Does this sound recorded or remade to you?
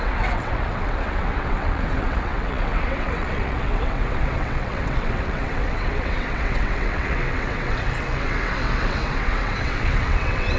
remade